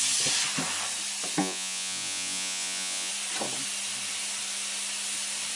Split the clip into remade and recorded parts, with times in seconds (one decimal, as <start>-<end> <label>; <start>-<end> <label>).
0.0-1.4 recorded; 1.4-3.1 remade; 3.1-5.6 recorded